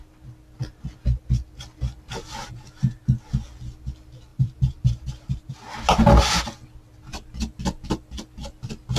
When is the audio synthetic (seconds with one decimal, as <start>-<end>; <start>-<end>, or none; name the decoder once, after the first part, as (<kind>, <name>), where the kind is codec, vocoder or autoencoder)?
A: 4.3-5.5 (vocoder, BigVGAN v2)